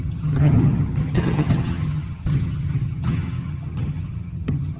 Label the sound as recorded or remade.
remade